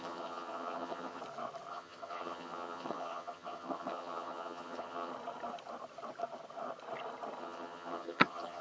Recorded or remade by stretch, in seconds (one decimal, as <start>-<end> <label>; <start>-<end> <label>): 0.0-1.2 remade; 1.2-1.7 recorded; 1.7-5.1 remade; 5.1-7.4 recorded; 7.4-8.6 remade